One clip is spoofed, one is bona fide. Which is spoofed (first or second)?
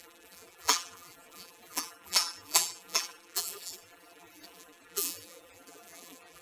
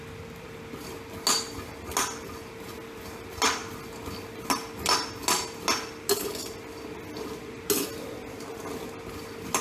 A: first